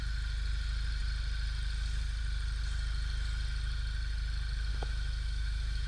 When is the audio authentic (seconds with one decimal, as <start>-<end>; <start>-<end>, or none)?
0.0-4.7